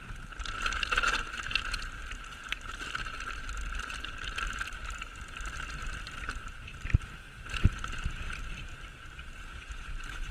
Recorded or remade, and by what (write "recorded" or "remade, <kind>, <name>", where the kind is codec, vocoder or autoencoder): remade, vocoder, BigVGAN v2